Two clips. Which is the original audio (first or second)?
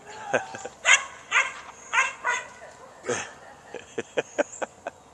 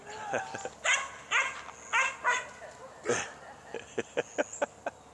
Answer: second